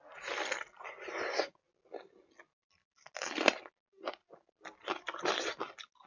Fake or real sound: real